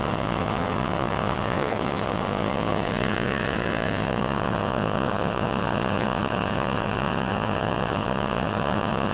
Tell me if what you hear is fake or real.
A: fake